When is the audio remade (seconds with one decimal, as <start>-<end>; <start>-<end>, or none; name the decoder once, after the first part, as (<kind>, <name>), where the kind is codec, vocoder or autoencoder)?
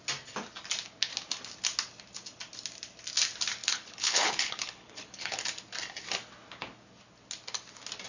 3.6-5.4 (codec, HILCodec)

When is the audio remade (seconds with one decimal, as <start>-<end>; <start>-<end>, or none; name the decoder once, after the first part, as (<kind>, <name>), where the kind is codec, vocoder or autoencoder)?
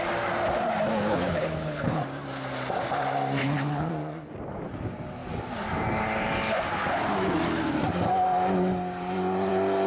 1.1-2.0 (codec, HILCodec); 3.4-3.9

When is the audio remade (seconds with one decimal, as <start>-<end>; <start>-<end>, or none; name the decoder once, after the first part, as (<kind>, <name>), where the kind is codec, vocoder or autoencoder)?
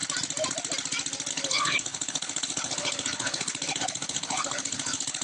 1.3-5.2 (codec, HILCodec)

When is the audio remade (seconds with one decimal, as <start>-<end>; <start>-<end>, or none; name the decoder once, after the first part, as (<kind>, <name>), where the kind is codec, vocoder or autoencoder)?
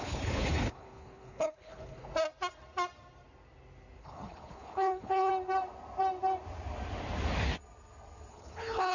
0.0-2.1 (codec, HILCodec); 4.0-5.3; 8.3-8.9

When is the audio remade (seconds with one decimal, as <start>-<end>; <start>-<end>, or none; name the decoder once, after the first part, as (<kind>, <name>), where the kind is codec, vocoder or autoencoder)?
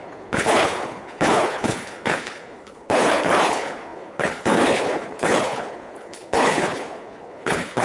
0.0-7.8 (codec, HILCodec)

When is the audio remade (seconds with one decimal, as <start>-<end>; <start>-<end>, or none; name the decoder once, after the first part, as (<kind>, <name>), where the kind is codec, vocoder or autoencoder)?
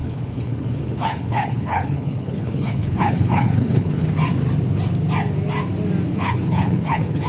0.0-4.0 (codec, HILCodec); 6.1-7.3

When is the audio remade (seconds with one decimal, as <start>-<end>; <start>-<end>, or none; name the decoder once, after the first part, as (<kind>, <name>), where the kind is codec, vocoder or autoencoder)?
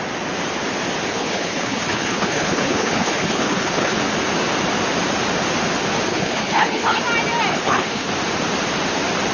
1.1-4.0 (codec, HILCodec); 6.1-7.0; 7.5-8.1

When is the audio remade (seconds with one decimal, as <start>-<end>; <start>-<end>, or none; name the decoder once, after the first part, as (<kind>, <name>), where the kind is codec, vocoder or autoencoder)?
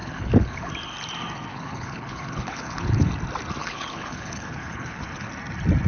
0.0-0.7 (codec, HILCodec); 1.5-3.1; 3.6-5.3